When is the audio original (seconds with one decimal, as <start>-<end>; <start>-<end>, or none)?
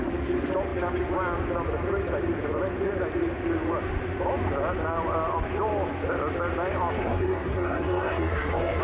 0.0-7.0